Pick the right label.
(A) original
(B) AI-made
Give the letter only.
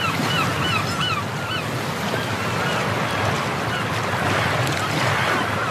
A